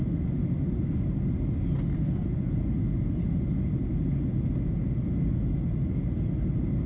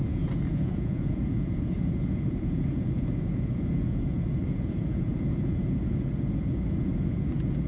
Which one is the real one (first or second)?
first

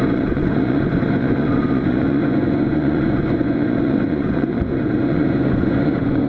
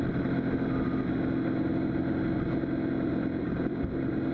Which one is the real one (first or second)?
second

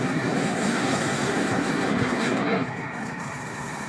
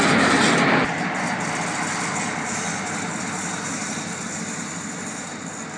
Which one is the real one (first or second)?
second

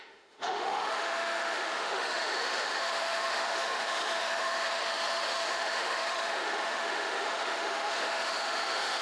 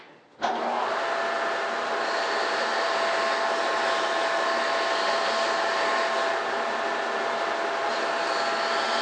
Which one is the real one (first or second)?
second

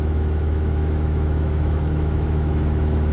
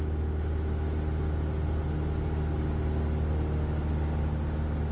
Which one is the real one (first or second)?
second